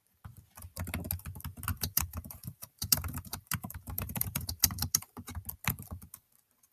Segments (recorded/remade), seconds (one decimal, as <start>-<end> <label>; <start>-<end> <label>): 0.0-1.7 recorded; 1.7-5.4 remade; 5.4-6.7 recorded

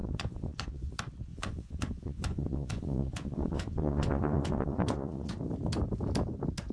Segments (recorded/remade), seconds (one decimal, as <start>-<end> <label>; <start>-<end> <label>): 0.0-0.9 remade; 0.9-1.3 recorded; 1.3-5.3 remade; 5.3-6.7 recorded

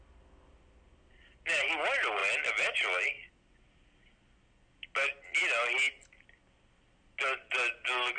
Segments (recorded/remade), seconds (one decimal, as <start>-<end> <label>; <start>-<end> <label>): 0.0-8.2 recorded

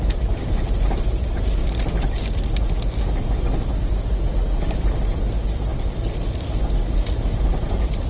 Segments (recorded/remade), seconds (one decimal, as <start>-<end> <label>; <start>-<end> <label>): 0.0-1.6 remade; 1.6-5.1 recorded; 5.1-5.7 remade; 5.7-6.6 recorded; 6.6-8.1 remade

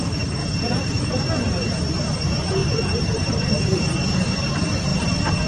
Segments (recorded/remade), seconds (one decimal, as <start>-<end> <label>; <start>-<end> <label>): 0.0-2.6 recorded; 2.6-3.8 remade; 3.8-4.9 recorded; 4.9-5.5 remade

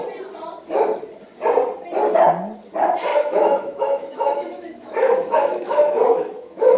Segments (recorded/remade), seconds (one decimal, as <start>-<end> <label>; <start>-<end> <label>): 0.0-3.1 recorded; 3.1-6.8 remade